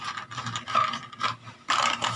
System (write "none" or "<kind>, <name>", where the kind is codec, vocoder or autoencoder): none